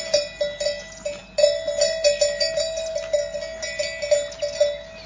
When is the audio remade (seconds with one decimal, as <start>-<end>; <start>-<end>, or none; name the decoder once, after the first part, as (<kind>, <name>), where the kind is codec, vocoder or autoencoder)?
none